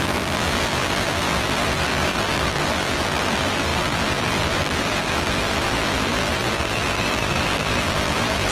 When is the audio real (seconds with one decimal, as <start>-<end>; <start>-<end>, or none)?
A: none